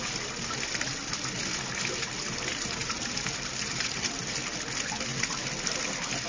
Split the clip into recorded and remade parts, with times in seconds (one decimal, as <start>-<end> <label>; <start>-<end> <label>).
0.0-2.8 recorded; 2.8-4.2 remade; 4.2-6.3 recorded

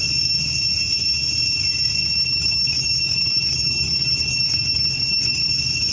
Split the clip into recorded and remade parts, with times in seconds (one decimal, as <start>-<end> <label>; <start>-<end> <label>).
0.0-2.0 recorded; 2.0-5.5 remade; 5.5-5.9 recorded

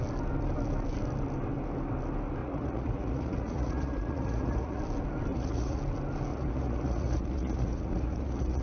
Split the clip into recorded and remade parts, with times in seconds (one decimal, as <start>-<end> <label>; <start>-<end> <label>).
0.0-2.4 recorded; 2.4-4.8 remade; 4.8-5.3 recorded; 5.3-5.8 remade; 5.8-6.3 recorded; 6.3-8.6 remade

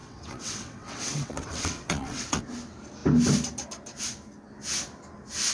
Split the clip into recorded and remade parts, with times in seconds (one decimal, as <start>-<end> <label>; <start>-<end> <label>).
0.0-2.4 remade; 2.4-5.5 recorded

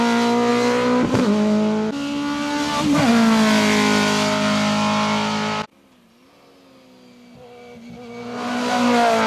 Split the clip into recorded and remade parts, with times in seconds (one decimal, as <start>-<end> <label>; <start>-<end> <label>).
0.0-9.3 recorded